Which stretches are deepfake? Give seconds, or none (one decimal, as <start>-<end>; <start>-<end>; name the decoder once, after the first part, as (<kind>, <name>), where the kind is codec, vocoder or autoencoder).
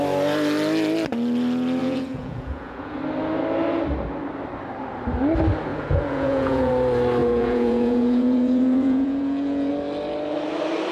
1.8-3.0 (vocoder, Vocos); 5.7-6.7; 7.2-9.7